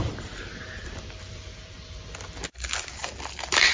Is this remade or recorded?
remade